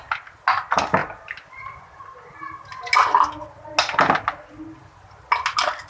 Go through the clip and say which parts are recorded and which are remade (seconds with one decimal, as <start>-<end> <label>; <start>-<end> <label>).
0.0-5.9 recorded